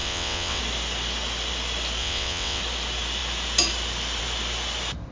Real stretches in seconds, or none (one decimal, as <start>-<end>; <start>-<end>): 0.6-2.0; 2.6-5.1